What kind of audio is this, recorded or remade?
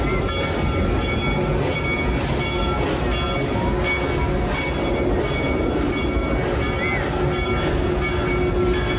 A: recorded